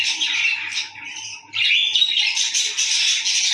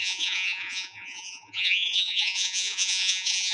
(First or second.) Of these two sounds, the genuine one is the first